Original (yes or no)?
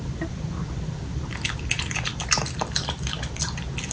yes